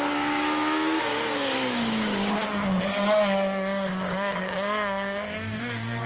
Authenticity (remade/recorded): remade